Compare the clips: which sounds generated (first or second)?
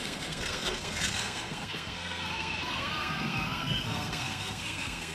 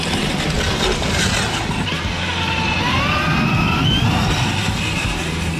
first